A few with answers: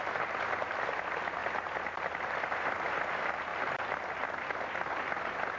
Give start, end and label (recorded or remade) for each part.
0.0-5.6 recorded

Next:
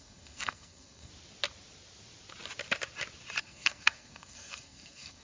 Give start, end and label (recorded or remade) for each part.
0.0-1.1 remade; 1.1-3.4 recorded; 3.4-5.2 remade

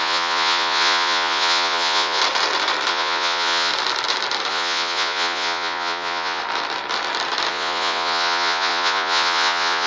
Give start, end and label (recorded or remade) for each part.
0.0-2.2 remade; 2.2-2.9 recorded; 2.9-3.7 remade; 3.7-4.5 recorded; 4.5-6.4 remade; 6.4-7.5 recorded; 7.5-9.9 remade

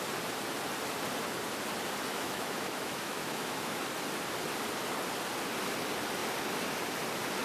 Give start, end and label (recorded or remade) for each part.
0.0-2.1 recorded; 2.1-3.8 remade; 3.8-7.4 recorded

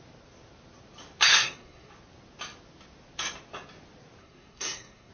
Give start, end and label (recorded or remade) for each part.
0.0-1.3 recorded; 1.3-1.9 remade; 1.9-4.2 recorded; 4.2-5.1 remade

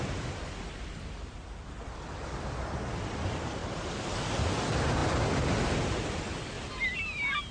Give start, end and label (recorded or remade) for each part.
0.0-7.5 recorded

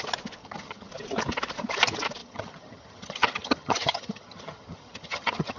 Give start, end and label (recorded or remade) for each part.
0.0-0.4 recorded; 0.4-0.9 remade; 0.9-2.2 recorded; 2.2-5.6 remade